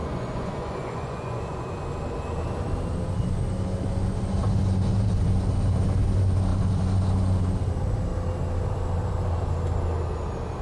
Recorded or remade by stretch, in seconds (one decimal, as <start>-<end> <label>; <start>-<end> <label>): 0.0-1.7 remade; 1.7-10.6 recorded